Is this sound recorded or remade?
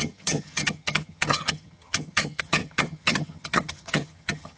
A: remade